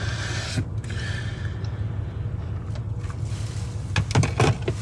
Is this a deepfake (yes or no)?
no